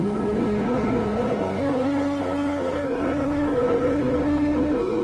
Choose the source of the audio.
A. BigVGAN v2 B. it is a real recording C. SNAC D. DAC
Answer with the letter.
C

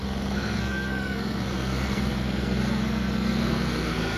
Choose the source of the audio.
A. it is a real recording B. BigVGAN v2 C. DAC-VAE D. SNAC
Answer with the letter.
D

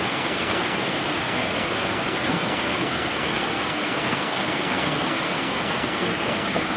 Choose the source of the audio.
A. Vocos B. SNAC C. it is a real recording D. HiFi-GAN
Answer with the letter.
B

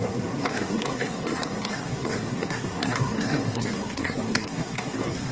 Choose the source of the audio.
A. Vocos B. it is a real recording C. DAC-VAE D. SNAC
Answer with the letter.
D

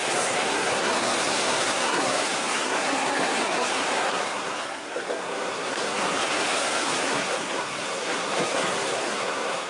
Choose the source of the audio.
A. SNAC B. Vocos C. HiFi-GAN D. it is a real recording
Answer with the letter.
A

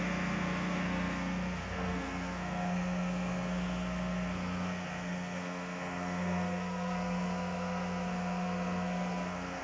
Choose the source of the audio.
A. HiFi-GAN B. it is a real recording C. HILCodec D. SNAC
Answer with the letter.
D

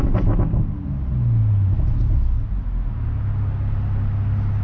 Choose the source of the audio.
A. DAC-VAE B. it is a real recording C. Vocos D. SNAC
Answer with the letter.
B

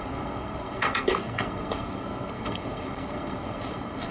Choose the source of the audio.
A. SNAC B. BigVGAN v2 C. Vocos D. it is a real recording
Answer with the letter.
A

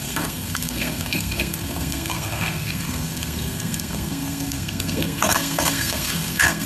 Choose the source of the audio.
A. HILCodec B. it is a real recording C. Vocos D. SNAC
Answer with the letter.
D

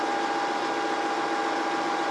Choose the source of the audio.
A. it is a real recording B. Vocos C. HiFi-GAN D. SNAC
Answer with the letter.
A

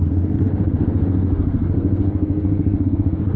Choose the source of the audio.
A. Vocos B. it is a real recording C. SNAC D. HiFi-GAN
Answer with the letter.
C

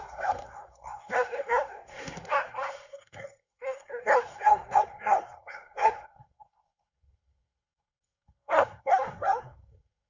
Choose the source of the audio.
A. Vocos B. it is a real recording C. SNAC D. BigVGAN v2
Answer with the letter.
C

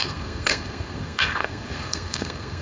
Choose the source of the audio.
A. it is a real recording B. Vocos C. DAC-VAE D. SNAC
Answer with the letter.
D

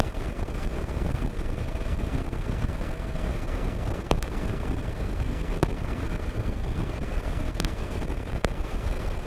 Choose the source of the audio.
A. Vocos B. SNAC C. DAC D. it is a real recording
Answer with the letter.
B